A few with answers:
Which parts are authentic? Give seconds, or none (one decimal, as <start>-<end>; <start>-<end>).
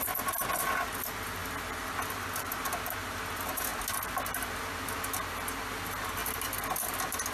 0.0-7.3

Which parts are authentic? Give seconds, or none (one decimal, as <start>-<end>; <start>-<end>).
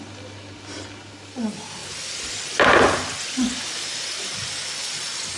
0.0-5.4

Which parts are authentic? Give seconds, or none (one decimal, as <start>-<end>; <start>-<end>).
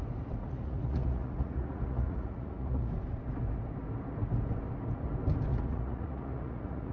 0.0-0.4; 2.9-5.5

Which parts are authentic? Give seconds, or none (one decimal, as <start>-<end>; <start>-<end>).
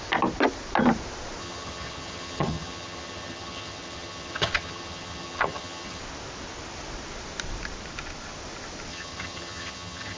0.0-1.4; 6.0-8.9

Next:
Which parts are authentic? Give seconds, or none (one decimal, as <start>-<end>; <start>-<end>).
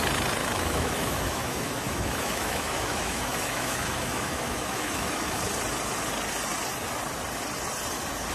0.0-0.4; 5.4-8.3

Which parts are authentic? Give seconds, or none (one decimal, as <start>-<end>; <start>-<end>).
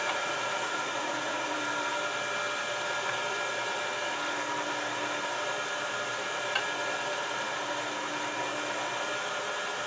1.6-9.9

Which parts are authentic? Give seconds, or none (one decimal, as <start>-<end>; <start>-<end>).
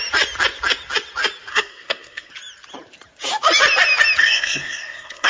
0.0-1.5; 2.3-4.2